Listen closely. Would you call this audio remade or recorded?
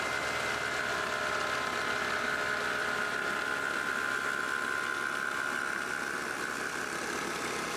recorded